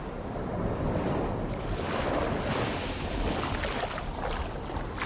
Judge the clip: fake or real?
real